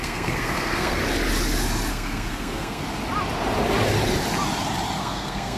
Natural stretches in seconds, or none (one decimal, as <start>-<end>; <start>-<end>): 1.0-1.9; 2.8-5.0